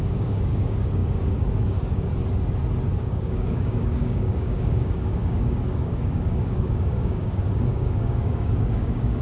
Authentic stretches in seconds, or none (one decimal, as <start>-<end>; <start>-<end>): 2.1-3.0